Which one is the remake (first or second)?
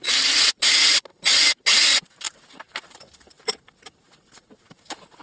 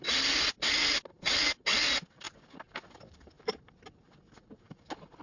first